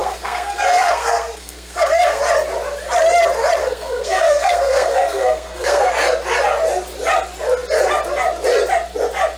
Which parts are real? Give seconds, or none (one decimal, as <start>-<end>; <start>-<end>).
2.2-3.6; 5.9-9.4